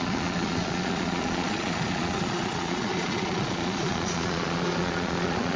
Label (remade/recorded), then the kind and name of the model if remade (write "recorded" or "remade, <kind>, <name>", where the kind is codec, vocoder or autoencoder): remade, vocoder, Vocos